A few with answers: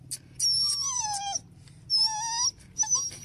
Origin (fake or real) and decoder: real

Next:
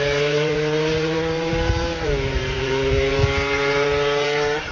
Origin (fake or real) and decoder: fake, vocoder, BigVGAN v2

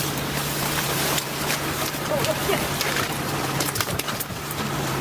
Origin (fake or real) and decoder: fake, vocoder, BigVGAN v2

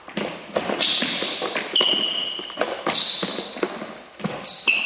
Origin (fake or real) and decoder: real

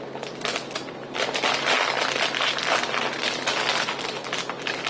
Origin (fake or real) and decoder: real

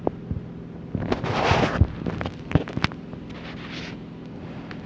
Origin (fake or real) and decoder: real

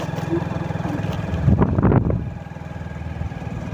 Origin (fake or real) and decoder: fake, vocoder, BigVGAN v2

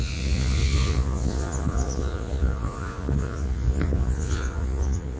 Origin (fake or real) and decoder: fake, vocoder, Vocos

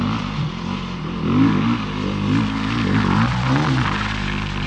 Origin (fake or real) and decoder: real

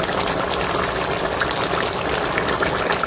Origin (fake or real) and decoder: real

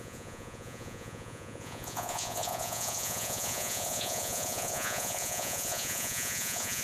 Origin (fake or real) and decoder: fake, vocoder, Vocos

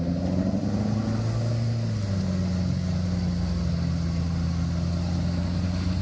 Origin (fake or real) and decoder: real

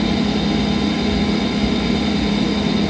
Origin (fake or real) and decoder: real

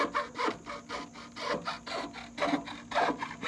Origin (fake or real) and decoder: real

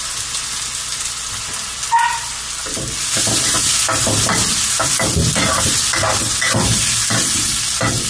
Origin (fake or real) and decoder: real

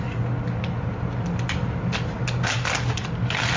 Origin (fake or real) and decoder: real